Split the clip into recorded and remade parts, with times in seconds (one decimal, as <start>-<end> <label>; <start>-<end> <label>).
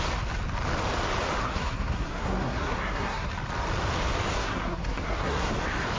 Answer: 0.0-1.4 recorded; 1.4-3.3 remade; 3.3-4.4 recorded; 4.4-5.5 remade; 5.5-6.0 recorded